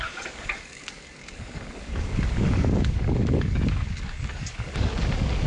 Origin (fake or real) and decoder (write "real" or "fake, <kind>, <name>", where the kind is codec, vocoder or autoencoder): fake, codec, DAC